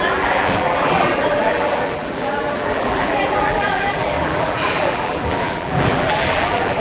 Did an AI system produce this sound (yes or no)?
yes